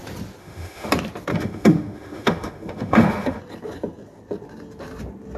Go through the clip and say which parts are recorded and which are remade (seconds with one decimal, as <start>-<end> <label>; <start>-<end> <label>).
0.0-0.4 recorded; 0.4-0.9 remade; 0.9-1.3 recorded; 1.3-3.4 remade; 3.4-5.4 recorded